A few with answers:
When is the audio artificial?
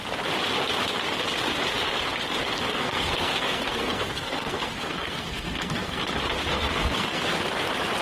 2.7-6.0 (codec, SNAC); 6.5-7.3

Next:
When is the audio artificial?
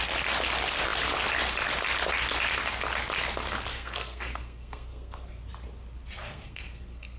3.7-5.4 (codec, SNAC); 6.2-7.2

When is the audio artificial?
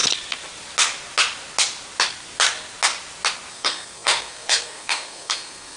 3.5-5.8 (codec, SNAC)